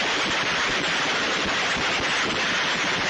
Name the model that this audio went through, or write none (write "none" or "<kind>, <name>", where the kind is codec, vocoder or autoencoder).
none